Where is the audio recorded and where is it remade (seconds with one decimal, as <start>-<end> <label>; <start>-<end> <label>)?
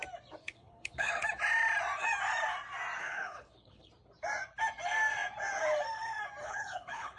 0.0-0.4 recorded; 0.4-1.1 remade; 1.1-3.0 recorded; 3.0-3.9 remade; 3.9-6.4 recorded; 6.4-7.2 remade